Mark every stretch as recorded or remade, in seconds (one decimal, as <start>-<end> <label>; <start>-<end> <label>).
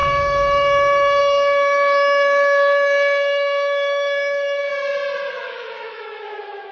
0.0-4.7 remade; 4.7-5.3 recorded; 5.3-6.7 remade